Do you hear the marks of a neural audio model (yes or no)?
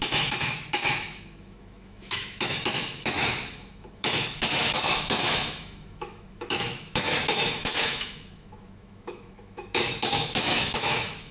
yes